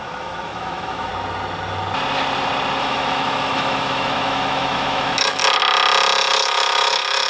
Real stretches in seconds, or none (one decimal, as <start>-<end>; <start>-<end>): 1.1-2.8; 5.4-6.3